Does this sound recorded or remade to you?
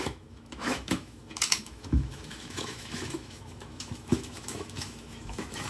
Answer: remade